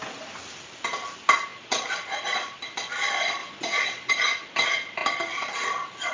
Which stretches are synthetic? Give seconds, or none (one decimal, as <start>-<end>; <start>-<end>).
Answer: 1.5-2.6; 3.4-4.1